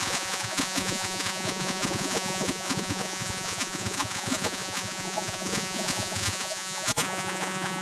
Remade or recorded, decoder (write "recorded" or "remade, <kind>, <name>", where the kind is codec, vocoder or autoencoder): remade, vocoder, Vocos